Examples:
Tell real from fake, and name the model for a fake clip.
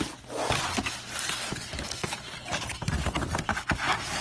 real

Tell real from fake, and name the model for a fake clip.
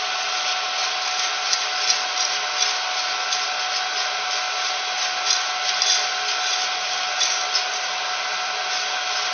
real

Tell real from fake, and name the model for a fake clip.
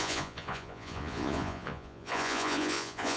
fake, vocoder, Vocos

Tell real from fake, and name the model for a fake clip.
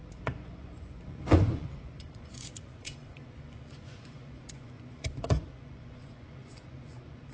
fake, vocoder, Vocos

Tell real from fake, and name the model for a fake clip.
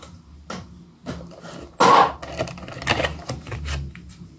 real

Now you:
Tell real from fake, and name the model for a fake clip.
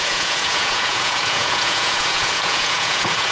fake, vocoder, Vocos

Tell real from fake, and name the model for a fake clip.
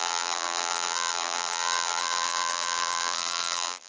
fake, vocoder, BigVGAN v2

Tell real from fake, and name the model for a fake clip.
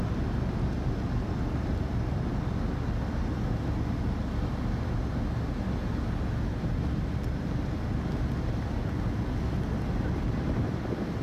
real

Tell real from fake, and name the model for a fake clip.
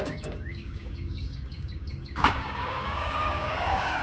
fake, codec, DAC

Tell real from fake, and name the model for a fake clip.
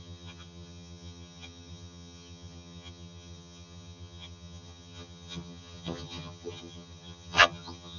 fake, vocoder, HiFi-GAN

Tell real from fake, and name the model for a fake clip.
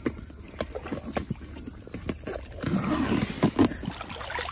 real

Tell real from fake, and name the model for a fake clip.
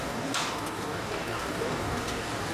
fake, codec, DAC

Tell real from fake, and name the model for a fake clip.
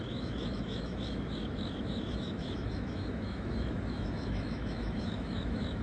fake, autoencoder, DAC-VAE